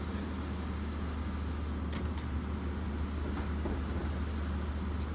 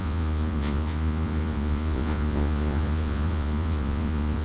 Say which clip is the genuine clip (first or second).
first